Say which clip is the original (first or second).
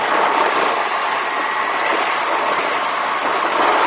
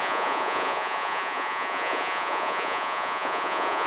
first